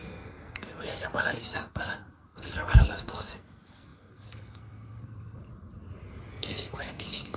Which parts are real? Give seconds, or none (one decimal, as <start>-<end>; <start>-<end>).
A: 5.4-6.3